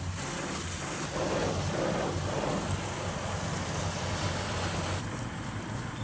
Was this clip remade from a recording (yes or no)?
yes